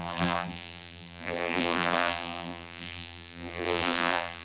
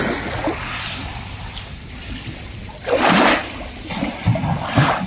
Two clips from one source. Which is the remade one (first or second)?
first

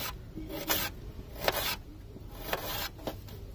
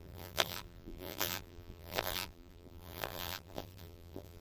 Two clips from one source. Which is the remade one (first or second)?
second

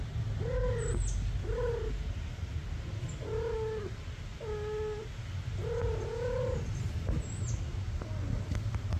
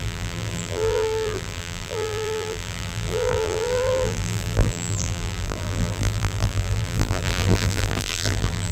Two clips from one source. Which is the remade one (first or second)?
second